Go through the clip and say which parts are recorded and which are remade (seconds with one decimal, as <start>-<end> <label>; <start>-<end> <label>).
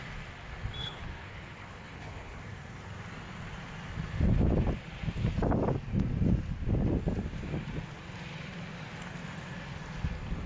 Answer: 0.0-0.8 recorded; 0.8-2.4 remade; 2.4-10.5 recorded